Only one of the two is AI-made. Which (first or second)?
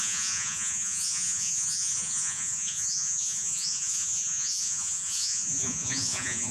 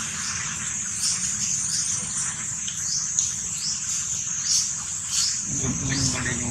first